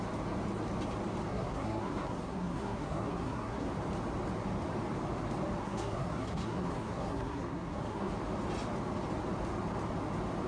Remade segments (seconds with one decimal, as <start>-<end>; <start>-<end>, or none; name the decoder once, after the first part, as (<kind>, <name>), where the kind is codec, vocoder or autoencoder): 1.3-3.7 (codec, SNAC); 5.6-8.1